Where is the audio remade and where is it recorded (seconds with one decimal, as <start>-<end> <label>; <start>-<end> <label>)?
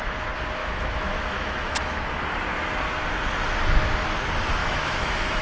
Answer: 0.0-0.6 recorded; 0.6-2.0 remade; 2.0-4.6 recorded; 4.6-5.4 remade